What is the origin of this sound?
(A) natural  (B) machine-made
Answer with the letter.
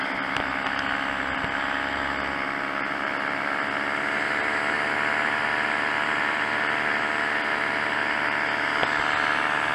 A